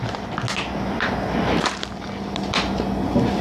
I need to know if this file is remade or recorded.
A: recorded